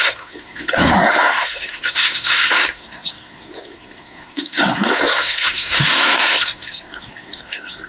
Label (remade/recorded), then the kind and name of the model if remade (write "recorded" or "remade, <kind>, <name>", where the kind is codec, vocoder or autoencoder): remade, codec, SNAC